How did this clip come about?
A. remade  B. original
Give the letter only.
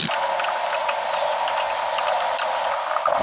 B